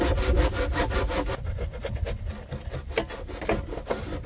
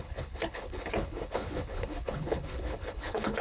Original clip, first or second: first